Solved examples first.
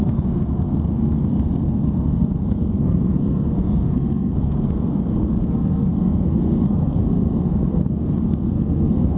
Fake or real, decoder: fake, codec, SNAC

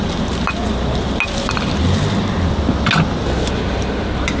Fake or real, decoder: real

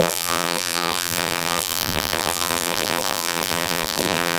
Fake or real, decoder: fake, vocoder, BigVGAN v2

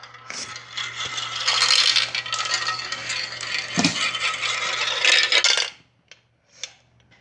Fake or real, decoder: real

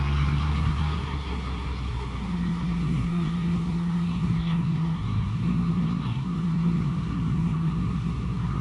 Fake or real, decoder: fake, codec, SNAC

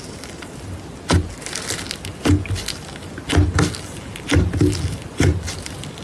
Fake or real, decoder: real